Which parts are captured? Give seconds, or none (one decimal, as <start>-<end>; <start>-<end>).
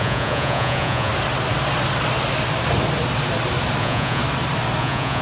1.1-3.8; 4.2-4.8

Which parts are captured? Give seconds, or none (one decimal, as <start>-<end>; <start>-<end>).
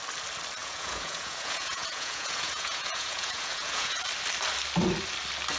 0.0-0.6; 4.0-5.6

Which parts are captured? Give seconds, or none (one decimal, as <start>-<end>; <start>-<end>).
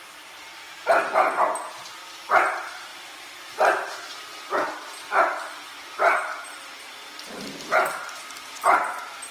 0.0-9.3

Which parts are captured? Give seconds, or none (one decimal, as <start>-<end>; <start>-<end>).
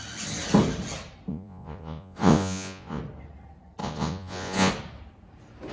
0.0-1.3; 3.0-3.8; 4.7-5.7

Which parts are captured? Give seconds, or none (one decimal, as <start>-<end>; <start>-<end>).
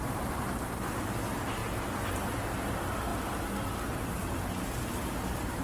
0.0-5.6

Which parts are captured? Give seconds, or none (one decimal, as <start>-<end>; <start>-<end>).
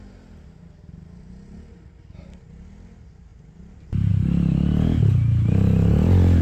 0.0-6.4